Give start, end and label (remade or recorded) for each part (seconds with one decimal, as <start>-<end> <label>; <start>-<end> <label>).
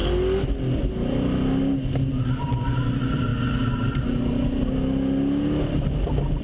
0.0-2.1 recorded; 2.1-3.3 remade; 3.3-5.6 recorded; 5.6-6.4 remade